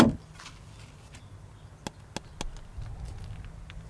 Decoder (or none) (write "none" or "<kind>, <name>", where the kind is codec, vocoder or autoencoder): none